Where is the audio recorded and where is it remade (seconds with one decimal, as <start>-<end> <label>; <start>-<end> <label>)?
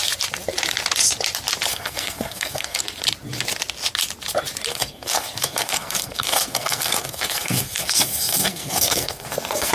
0.0-1.7 recorded; 1.7-2.8 remade; 2.8-4.7 recorded; 4.7-9.7 remade